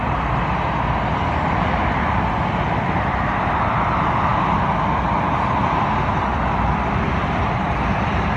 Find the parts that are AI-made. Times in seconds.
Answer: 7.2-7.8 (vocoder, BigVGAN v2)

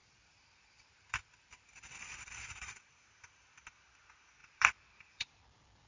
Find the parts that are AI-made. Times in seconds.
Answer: 0.0-2.9 (vocoder, BigVGAN v2); 4.4-5.5

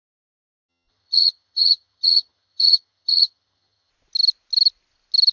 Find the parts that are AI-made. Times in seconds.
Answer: 0.7-3.9 (vocoder, HiFi-GAN)

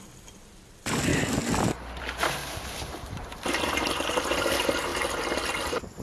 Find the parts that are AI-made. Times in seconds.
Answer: 0.0-1.1 (vocoder, BigVGAN v2); 2.0-4.9; 5.4-6.0

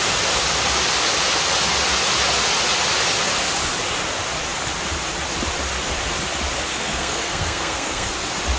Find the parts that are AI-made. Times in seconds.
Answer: 6.7-8.1 (codec, SNAC)